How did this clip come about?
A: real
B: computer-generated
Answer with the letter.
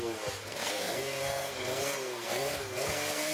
B